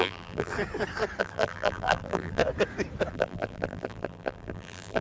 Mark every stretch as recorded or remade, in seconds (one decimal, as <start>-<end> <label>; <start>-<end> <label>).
0.0-0.5 remade; 0.5-1.2 recorded; 1.2-2.4 remade; 2.4-3.1 recorded; 3.1-5.0 remade